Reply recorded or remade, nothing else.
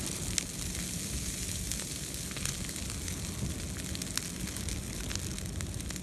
recorded